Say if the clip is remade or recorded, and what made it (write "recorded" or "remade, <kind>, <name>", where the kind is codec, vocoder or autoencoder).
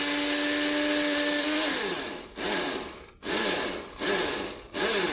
recorded